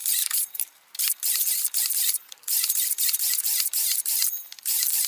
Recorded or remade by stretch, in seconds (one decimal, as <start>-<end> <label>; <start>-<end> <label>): 0.0-5.1 remade